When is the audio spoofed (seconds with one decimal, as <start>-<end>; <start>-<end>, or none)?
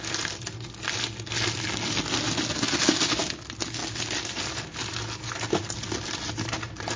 none